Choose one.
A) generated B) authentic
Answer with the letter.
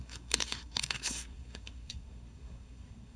A